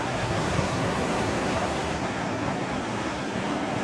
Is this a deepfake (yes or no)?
yes